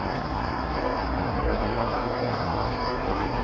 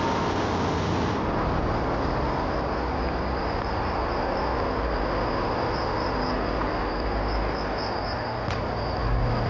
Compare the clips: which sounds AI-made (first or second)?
first